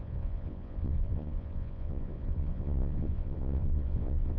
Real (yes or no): no